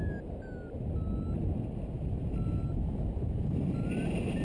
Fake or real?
real